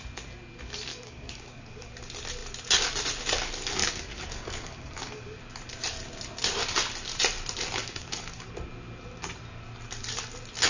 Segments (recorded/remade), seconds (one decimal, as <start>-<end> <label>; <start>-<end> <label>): 0.0-0.9 recorded; 0.9-1.9 remade; 1.9-3.8 recorded; 3.8-5.4 remade; 5.4-7.8 recorded; 7.8-8.5 remade; 8.5-10.7 recorded